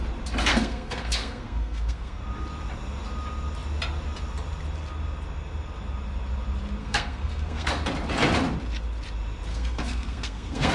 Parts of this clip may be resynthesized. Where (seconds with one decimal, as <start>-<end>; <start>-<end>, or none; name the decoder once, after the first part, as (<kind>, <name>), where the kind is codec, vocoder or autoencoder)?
0.5-2.2 (codec, SNAC); 6.8-7.7; 9.5-10.7